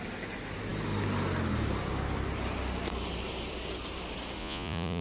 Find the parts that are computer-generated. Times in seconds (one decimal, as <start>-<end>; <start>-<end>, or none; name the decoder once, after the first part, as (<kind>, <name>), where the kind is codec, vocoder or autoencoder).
4.4-5.0 (vocoder, Vocos)